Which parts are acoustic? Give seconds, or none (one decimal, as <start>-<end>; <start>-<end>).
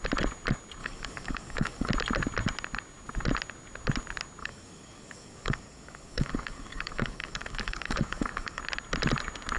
0.0-0.8; 1.9-4.4; 8.6-9.6